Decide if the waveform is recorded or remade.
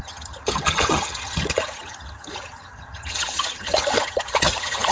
remade